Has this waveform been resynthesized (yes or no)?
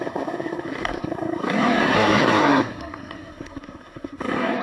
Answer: yes